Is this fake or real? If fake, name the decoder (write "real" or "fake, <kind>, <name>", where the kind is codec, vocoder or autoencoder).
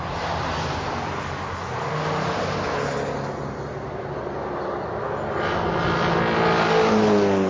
real